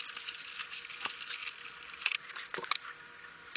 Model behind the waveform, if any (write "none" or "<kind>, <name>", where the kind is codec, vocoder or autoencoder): none